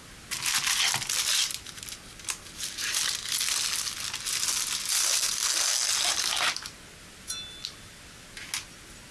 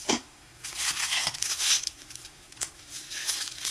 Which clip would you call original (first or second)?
first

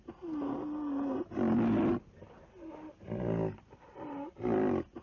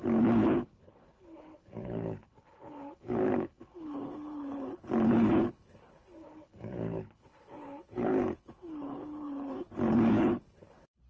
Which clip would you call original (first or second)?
first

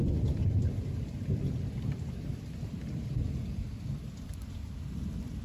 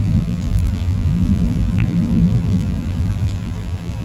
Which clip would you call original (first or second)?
first